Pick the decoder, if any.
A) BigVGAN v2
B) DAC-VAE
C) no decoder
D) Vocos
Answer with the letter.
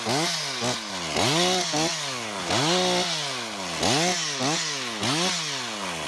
C